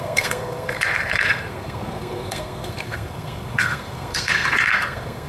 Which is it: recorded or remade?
remade